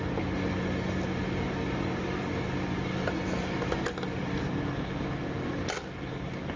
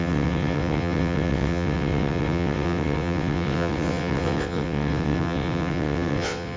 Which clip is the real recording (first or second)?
first